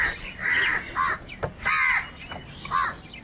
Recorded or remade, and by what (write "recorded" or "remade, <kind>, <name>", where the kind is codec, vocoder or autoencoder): recorded